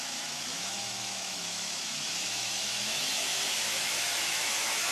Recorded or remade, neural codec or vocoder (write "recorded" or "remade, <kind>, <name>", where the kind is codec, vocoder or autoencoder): remade, autoencoder, DAC-VAE